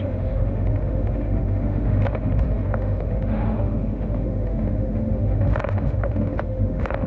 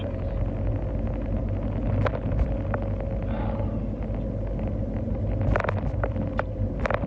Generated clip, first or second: first